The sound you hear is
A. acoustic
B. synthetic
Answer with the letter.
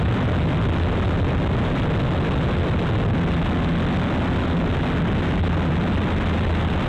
A